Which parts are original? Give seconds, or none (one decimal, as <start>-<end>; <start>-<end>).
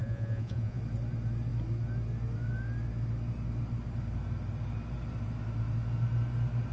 0.8-6.7